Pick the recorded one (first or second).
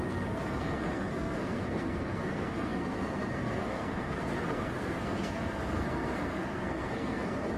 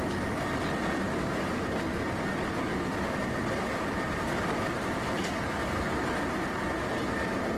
second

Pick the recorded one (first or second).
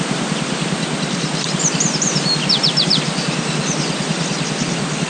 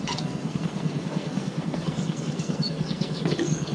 first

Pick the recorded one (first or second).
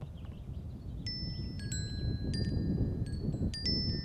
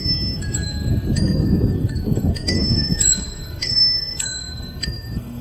first